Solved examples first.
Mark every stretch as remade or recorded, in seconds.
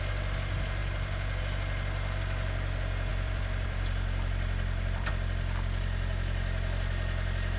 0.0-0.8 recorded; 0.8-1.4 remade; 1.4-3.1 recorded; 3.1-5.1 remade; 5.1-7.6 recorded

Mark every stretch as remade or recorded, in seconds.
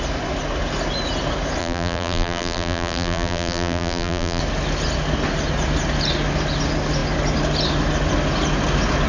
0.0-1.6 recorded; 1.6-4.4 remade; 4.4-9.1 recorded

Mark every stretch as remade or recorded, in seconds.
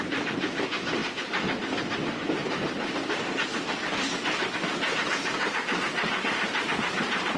0.0-7.4 recorded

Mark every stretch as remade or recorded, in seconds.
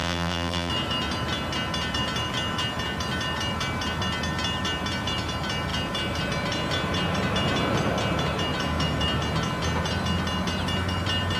0.0-0.7 remade; 0.7-11.4 recorded